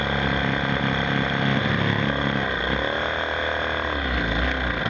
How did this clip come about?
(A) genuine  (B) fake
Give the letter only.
A